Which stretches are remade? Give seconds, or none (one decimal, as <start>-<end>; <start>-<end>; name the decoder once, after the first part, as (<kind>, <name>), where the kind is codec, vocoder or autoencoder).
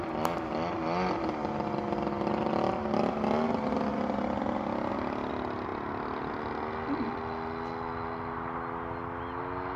none